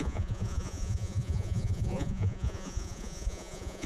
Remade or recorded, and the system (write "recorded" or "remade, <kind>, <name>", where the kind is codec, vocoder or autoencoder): remade, vocoder, Vocos